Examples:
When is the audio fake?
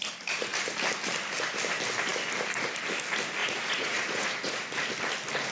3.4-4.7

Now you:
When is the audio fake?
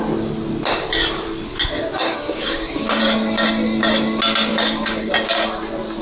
2.0-3.0; 4.5-5.1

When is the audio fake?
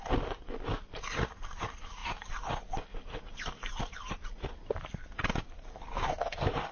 none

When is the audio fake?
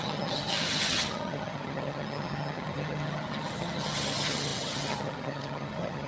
0.0-6.1